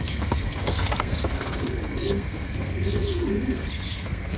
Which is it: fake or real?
fake